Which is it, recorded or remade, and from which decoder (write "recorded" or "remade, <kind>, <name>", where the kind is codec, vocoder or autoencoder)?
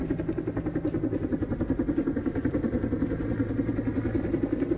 recorded